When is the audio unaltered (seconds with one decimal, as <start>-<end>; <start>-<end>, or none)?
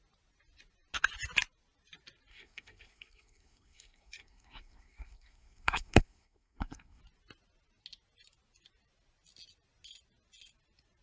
0.0-2.3; 7.0-11.0